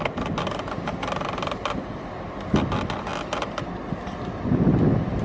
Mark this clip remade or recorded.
recorded